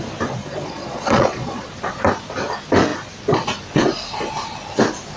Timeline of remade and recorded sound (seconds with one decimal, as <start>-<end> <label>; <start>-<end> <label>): 0.0-0.4 recorded; 0.4-1.7 remade; 1.7-5.2 recorded